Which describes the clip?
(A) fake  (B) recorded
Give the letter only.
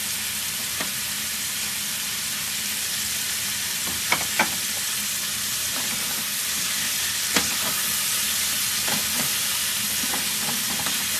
B